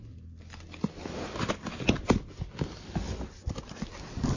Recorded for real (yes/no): yes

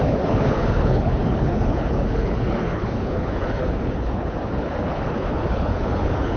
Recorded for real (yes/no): no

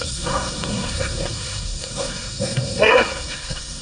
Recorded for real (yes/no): no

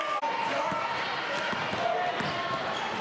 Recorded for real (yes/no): yes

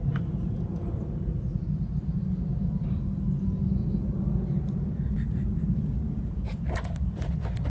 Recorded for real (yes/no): yes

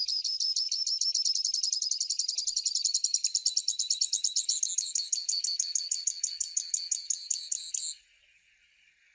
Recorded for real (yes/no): yes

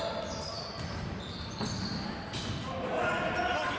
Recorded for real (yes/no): yes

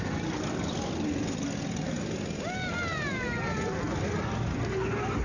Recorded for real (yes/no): yes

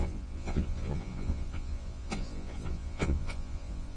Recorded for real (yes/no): no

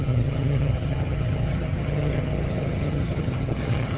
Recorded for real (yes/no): no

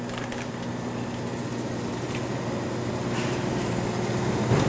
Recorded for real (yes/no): yes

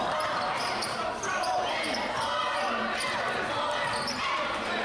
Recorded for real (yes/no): no